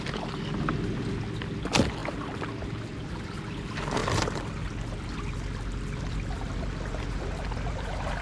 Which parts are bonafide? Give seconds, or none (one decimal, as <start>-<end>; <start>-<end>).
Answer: 0.0-8.2